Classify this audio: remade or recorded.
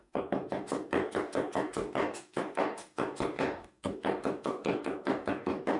remade